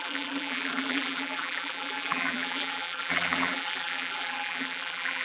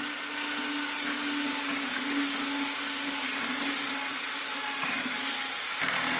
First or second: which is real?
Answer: second